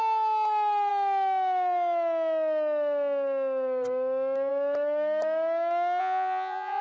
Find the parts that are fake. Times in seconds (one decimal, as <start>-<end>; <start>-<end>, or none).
6.0-6.8